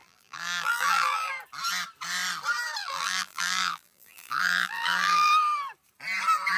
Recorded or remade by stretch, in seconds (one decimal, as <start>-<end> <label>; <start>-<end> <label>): 0.0-1.3 remade; 1.3-2.8 recorded; 2.8-5.3 remade; 5.3-6.6 recorded